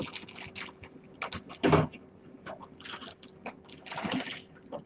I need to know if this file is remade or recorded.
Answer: recorded